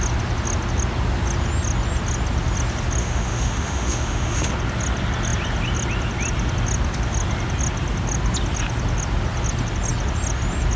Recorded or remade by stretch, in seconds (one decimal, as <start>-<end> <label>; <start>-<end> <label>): 0.0-3.0 recorded; 3.0-4.5 remade; 4.5-10.8 recorded